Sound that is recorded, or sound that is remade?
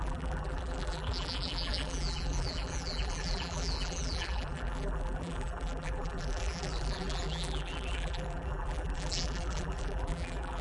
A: remade